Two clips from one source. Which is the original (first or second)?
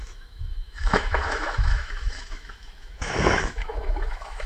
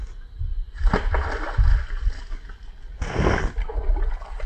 second